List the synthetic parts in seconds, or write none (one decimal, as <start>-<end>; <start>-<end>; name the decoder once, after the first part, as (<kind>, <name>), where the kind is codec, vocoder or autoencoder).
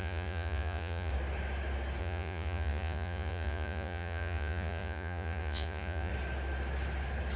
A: 0.0-1.1 (vocoder, Vocos); 2.0-6.1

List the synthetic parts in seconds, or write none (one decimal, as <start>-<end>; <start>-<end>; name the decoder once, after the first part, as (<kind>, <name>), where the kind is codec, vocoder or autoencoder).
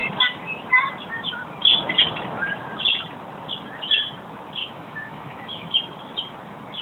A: 4.6-5.8 (autoencoder, DAC-VAE)